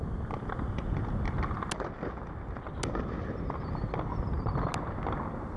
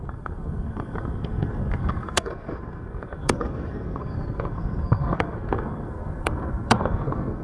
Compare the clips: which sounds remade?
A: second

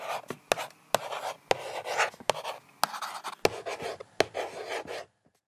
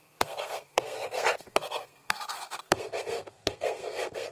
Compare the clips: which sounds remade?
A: second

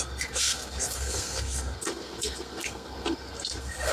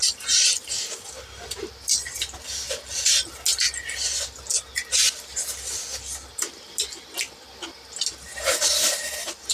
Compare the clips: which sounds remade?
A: first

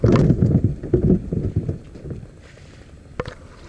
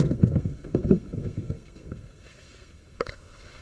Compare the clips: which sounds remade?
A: second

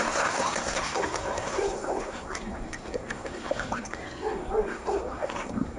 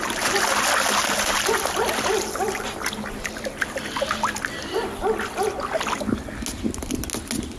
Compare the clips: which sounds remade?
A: first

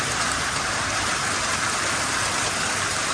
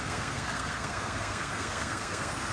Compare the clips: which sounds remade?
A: second